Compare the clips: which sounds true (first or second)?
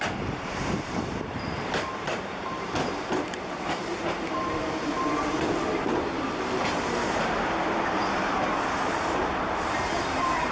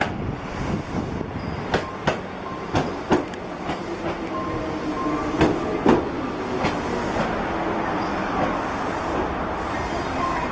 second